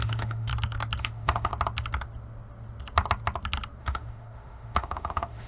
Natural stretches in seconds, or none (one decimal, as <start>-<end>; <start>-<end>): 0.5-1.0; 1.5-3.8